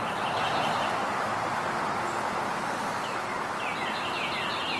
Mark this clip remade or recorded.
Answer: recorded